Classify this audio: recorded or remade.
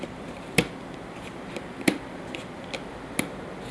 remade